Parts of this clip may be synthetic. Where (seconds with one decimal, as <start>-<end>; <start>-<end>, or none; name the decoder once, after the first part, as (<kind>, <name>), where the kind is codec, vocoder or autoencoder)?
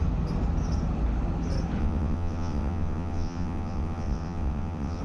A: 1.8-5.0 (vocoder, WaveNeXt)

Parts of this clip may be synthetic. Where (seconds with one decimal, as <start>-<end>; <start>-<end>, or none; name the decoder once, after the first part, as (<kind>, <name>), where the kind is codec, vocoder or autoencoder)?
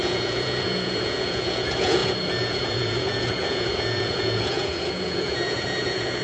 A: 0.0-6.2 (vocoder, Vocos)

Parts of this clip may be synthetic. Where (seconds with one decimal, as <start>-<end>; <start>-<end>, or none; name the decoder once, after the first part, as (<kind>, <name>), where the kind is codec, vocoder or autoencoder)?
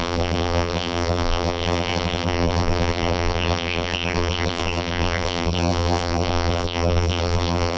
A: 0.0-7.8 (vocoder, BigVGAN v2)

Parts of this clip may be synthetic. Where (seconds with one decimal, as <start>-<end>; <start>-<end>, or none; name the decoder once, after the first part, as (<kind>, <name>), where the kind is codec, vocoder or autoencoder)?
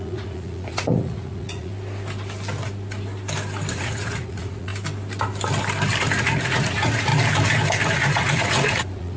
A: 0.0-1.7 (vocoder, Vocos); 3.7-4.7; 6.0-7.1; 7.9-9.2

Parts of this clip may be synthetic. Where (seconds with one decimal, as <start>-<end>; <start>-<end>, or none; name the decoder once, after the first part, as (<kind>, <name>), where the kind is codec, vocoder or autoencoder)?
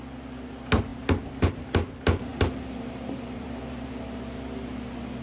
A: 2.3-3.6 (vocoder, BigVGAN v2)